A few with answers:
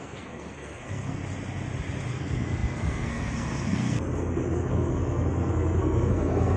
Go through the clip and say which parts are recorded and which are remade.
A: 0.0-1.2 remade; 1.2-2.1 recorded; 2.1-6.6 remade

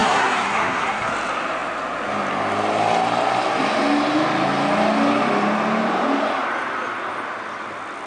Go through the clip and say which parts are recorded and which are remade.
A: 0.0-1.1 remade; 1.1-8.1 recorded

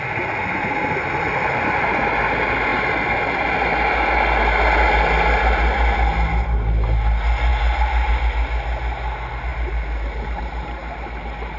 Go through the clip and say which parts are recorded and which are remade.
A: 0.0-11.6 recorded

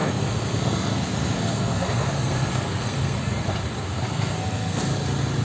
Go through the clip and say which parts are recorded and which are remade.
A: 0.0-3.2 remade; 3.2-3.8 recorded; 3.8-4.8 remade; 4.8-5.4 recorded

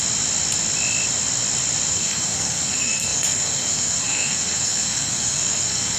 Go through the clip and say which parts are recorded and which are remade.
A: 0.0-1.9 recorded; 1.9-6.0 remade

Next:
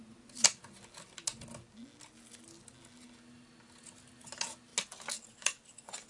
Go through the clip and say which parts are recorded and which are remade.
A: 0.0-6.1 recorded

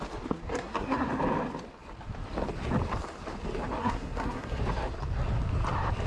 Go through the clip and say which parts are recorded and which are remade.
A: 0.0-0.5 recorded; 0.5-1.1 remade; 1.1-3.8 recorded; 3.8-4.6 remade; 4.6-6.1 recorded